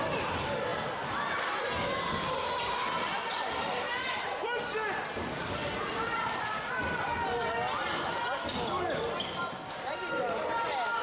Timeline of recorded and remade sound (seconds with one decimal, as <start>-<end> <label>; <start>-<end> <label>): 0.0-5.6 recorded; 5.6-6.7 remade; 6.7-11.0 recorded